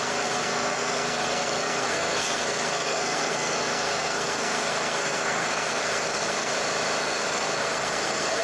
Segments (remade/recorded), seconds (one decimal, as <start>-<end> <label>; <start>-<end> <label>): 0.0-6.5 remade; 6.5-7.0 recorded; 7.0-8.4 remade